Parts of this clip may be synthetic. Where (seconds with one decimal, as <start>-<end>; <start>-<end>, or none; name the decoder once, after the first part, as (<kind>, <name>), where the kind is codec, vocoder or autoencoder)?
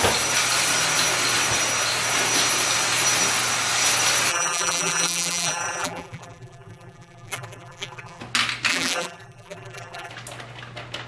4.3-8.2 (vocoder, BigVGAN v2); 8.7-10.1